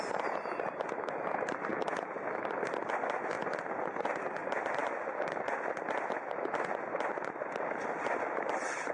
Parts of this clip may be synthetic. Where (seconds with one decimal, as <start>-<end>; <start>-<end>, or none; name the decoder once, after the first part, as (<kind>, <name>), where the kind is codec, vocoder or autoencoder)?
none